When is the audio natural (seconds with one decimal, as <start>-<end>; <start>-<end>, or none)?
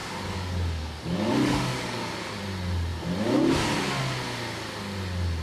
2.4-5.4